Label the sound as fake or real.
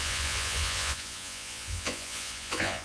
fake